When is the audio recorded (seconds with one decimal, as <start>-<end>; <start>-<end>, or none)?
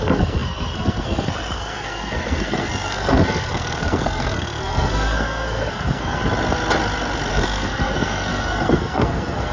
6.2-7.3